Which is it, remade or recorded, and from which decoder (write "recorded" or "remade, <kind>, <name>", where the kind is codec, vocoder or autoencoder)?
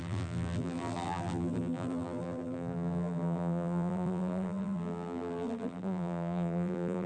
remade, vocoder, BigVGAN v2